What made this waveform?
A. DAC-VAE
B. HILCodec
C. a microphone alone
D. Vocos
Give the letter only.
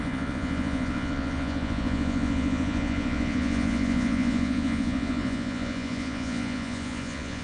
D